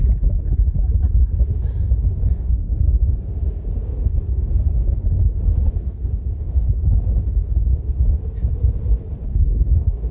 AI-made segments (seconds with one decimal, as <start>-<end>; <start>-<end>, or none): 2.3-4.1; 5.7-6.8; 9.3-10.1